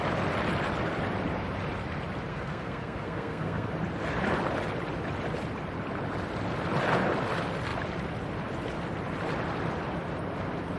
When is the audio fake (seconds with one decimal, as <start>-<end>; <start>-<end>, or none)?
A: 2.3-3.7